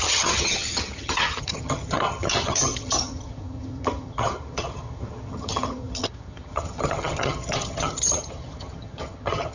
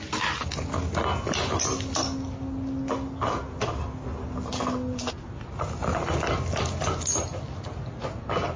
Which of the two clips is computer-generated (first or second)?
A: first